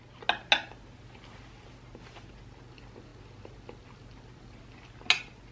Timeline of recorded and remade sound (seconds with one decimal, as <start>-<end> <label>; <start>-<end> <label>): 0.0-5.5 recorded